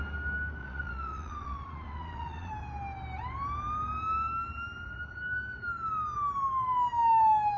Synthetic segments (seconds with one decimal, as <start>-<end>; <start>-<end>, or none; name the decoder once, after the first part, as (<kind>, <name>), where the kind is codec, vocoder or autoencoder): 0.6-2.5 (vocoder, Vocos)